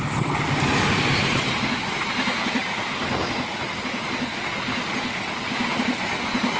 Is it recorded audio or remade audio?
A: recorded